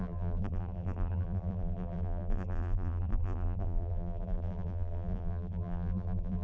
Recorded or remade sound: remade